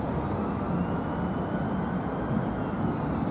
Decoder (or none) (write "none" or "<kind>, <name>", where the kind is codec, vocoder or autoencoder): none